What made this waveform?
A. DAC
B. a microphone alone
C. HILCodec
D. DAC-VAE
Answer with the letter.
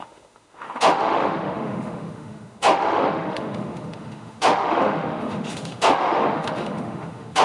D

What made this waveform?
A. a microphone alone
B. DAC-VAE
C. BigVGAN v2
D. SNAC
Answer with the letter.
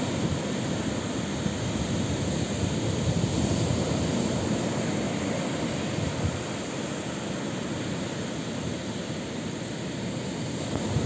A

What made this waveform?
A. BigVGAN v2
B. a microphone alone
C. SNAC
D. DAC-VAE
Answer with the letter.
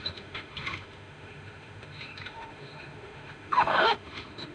D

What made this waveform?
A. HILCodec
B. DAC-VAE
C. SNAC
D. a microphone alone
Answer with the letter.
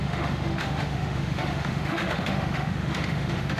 B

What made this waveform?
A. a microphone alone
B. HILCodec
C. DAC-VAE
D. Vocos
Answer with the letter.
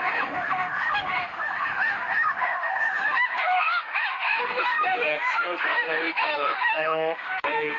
C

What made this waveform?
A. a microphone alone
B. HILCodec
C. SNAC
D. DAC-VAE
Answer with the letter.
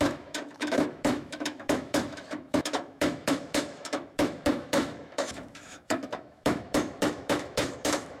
D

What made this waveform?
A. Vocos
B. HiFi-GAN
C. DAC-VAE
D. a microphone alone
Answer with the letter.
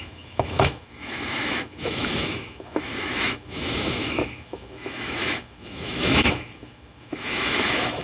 C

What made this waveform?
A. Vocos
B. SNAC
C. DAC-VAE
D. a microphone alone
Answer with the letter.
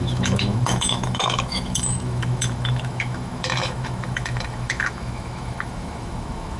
C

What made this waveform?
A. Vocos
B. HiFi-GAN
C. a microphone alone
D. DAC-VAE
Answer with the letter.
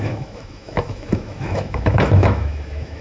D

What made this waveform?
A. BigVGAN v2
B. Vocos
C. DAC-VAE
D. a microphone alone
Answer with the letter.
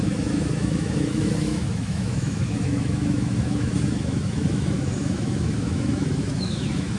C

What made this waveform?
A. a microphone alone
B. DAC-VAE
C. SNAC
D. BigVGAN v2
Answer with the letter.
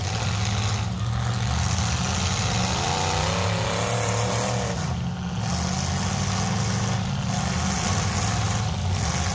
A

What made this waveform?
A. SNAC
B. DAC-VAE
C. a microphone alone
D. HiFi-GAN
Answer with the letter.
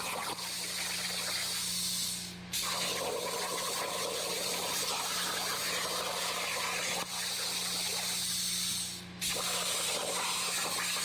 C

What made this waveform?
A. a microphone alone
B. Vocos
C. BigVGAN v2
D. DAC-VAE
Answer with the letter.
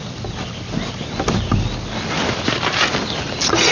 A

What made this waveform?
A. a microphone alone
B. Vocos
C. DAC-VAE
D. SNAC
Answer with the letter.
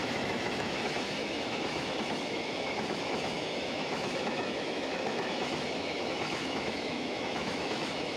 C